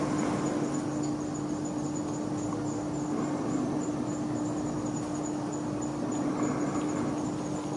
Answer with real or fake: real